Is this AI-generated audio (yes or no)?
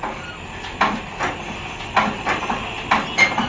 no